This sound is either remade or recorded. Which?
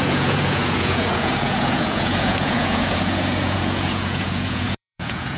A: remade